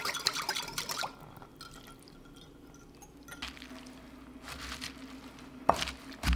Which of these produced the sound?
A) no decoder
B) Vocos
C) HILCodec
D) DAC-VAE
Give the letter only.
A